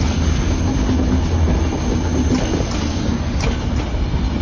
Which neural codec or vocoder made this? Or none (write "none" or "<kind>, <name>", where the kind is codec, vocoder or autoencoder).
none